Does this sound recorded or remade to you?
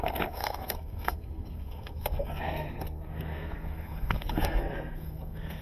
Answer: remade